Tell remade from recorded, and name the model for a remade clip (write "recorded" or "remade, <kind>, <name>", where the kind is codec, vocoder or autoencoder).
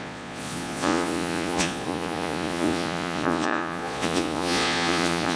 remade, vocoder, Vocos